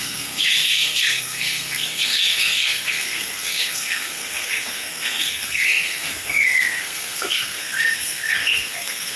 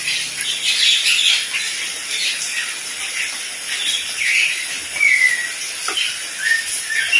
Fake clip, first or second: first